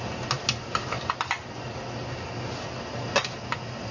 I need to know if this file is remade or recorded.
recorded